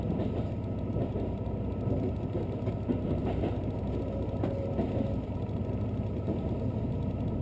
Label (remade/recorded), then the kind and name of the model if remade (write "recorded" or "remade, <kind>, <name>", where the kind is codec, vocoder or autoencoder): recorded